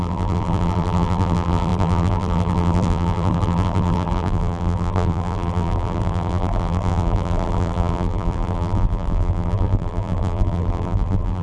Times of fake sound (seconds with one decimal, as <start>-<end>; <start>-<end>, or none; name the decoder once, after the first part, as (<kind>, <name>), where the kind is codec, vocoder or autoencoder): 0.0-11.4 (vocoder, BigVGAN v2)